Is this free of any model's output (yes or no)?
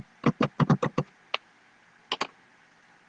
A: yes